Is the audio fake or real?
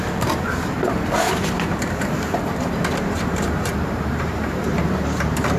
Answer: fake